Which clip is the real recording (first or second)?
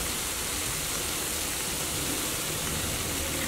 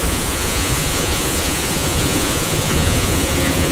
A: first